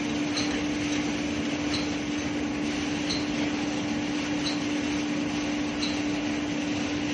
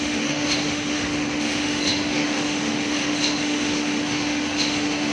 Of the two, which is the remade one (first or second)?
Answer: second